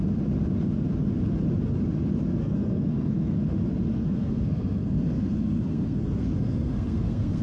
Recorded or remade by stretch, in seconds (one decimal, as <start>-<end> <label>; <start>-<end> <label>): 0.0-2.4 recorded; 2.4-3.4 remade; 3.4-3.9 recorded; 3.9-7.4 remade